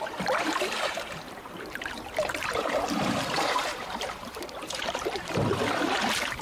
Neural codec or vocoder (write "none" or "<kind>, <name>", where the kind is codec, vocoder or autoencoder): vocoder, BigVGAN v2